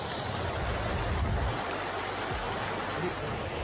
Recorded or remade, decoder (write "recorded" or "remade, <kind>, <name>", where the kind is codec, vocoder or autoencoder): recorded